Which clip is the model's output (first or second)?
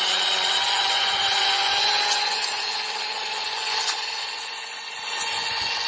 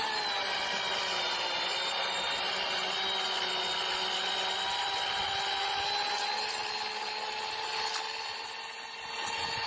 first